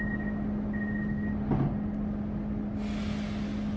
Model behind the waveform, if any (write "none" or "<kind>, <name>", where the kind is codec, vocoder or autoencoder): none